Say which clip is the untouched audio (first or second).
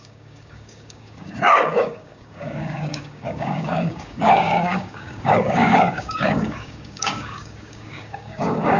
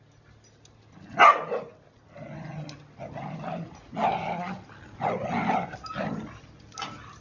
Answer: second